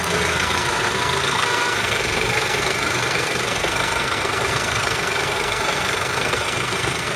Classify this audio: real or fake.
fake